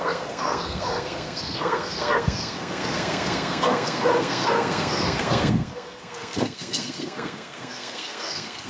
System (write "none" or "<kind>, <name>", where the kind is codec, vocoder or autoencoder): codec, SNAC